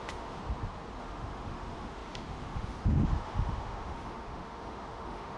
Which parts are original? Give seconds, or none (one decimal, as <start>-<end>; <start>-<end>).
0.4-1.0